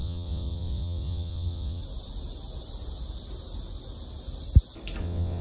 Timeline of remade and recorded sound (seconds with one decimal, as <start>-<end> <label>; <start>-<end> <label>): 0.0-1.8 remade; 1.8-5.0 recorded; 5.0-5.4 remade